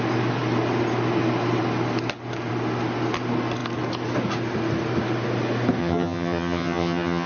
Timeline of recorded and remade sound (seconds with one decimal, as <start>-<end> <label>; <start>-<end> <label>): 0.0-5.8 recorded; 5.8-7.3 remade